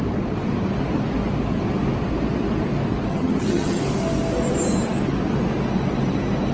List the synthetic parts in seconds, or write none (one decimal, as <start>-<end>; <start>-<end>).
3.1-3.8